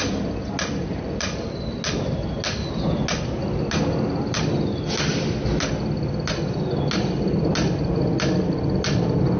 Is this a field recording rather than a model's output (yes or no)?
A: yes